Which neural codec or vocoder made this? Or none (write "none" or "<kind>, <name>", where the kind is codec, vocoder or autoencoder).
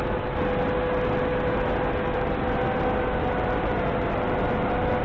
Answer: none